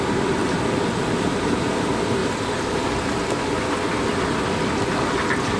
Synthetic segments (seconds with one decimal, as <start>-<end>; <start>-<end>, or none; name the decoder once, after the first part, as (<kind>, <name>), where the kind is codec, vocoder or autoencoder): 0.0-2.2 (vocoder, BigVGAN v2)